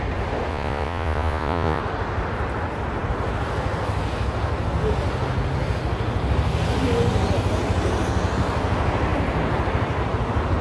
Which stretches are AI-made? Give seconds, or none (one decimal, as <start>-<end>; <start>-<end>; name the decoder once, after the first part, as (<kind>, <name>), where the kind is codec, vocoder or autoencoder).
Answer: 0.5-1.8 (vocoder, Vocos)